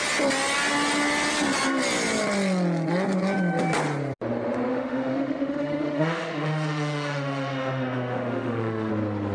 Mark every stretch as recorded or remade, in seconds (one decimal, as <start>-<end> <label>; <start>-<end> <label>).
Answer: 0.0-4.7 recorded; 4.7-8.9 remade; 8.9-9.3 recorded